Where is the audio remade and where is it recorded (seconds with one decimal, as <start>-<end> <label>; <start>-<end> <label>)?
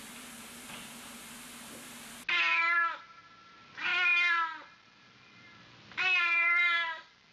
0.0-7.3 recorded